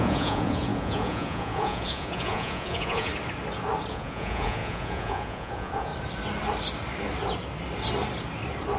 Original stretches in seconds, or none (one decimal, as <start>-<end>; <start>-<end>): 3.1-3.9; 5.9-8.8